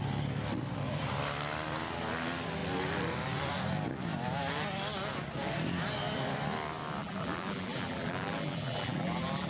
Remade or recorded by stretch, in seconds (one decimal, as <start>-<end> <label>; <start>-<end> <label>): 0.0-7.0 recorded; 7.0-9.5 remade